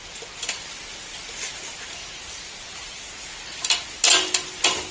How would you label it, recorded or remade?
recorded